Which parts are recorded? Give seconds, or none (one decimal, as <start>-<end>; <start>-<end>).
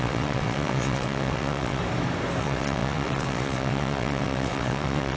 1.8-2.4